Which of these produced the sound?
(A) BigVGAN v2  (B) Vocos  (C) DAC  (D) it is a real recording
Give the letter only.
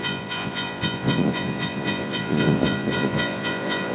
B